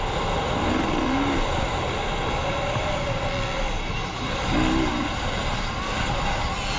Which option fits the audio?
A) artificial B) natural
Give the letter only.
B